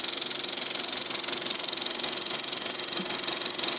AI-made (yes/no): no